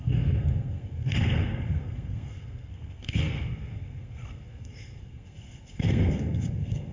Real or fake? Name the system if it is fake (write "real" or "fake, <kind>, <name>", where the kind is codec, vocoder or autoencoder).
fake, codec, SNAC